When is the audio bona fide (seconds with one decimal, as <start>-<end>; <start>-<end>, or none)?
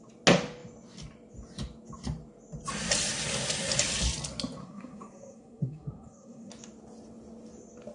0.0-4.6; 6.5-7.9